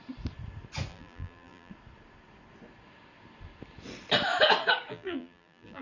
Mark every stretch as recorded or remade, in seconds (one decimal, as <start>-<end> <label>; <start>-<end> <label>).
0.0-0.9 recorded; 0.9-1.7 remade; 1.7-4.9 recorded; 4.9-5.8 remade